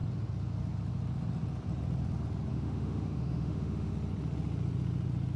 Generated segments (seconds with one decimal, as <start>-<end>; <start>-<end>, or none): 2.5-3.9